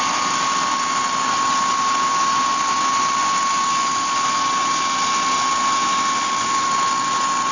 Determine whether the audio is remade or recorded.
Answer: recorded